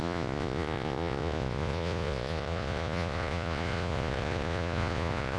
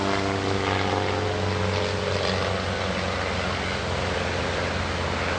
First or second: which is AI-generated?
first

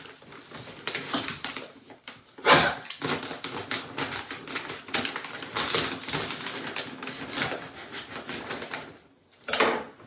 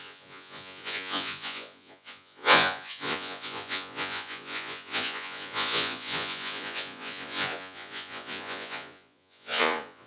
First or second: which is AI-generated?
second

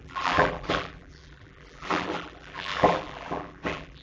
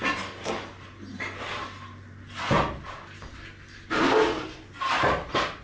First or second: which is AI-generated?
first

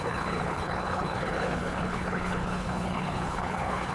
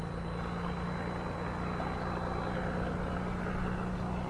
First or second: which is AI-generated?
first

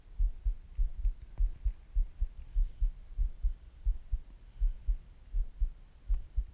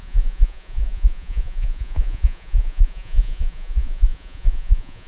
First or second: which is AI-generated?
second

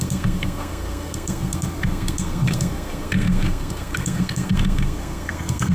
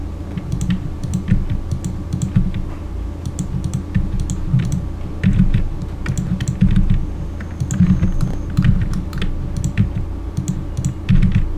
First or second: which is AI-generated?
first